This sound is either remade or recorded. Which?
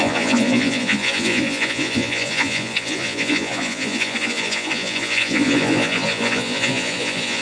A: remade